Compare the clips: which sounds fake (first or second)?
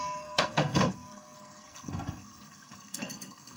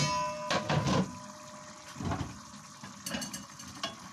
first